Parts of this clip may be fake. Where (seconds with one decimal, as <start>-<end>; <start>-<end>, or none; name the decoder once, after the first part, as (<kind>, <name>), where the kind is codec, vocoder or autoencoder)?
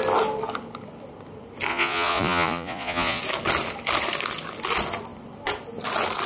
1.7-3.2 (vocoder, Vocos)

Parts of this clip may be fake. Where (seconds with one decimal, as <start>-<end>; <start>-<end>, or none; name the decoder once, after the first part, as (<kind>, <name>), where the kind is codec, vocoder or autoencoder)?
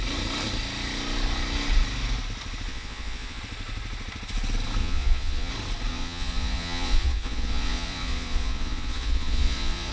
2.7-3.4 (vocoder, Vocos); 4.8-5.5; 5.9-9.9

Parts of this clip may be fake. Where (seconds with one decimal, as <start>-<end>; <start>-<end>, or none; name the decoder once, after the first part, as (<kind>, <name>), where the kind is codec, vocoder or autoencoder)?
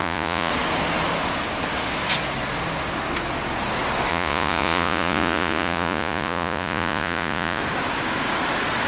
0.0-0.5 (vocoder, Vocos); 4.1-7.6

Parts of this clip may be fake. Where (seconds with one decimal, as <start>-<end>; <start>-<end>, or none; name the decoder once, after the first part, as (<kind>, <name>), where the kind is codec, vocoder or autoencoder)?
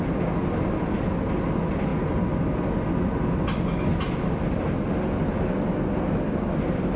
none